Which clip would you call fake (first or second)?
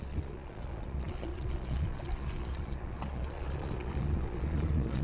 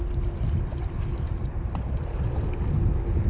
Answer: first